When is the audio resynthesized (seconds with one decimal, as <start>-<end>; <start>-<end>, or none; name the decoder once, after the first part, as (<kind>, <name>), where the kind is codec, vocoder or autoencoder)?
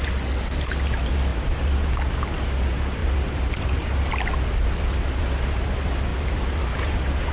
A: 3.0-4.1 (vocoder, BigVGAN v2); 6.1-7.3